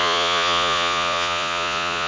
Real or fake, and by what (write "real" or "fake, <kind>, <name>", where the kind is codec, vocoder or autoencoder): fake, vocoder, Vocos